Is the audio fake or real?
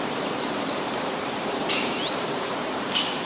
fake